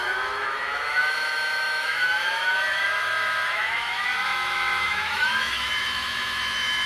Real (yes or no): no